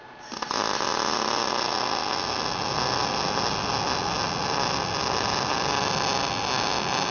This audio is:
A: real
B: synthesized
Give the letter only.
A